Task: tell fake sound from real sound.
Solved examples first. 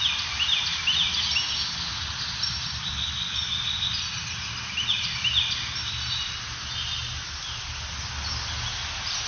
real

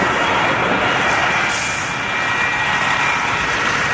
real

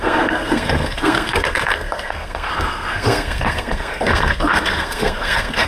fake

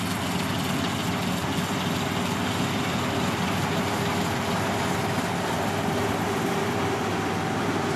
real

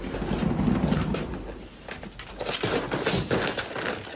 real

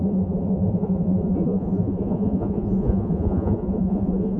fake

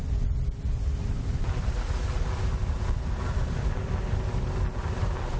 real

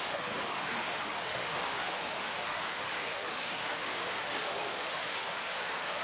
fake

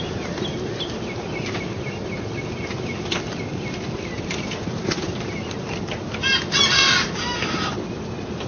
real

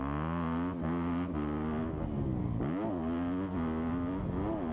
real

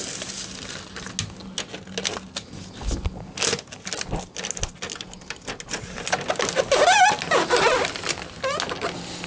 real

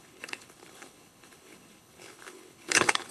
fake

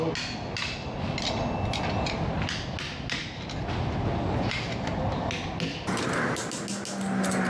real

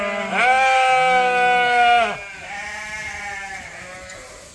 real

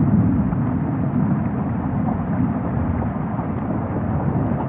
real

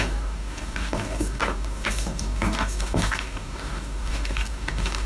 fake